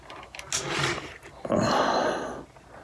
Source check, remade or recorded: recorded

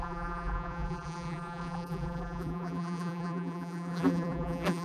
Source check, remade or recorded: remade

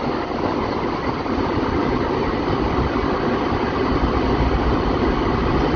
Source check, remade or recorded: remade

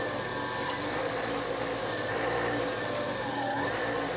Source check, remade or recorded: recorded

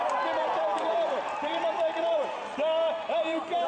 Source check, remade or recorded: remade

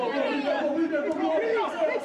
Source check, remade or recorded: remade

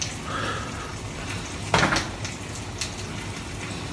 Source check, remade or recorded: recorded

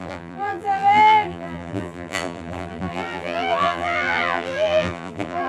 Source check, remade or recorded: remade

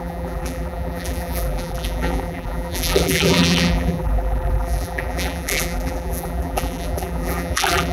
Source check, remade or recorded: remade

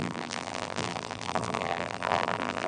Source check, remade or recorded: remade